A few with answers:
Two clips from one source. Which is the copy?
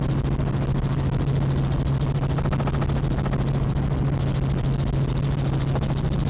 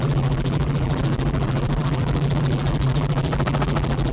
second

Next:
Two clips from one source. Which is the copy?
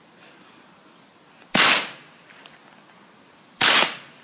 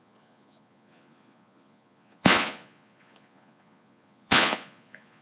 second